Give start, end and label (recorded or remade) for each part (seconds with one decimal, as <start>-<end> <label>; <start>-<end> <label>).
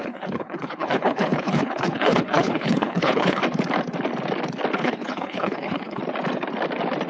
0.0-3.4 remade; 3.4-4.8 recorded; 4.8-6.0 remade; 6.0-7.1 recorded